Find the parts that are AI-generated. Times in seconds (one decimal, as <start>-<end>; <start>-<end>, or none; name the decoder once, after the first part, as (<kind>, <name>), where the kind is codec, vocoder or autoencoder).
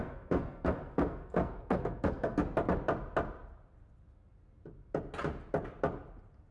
0.0-2.4 (codec, SNAC)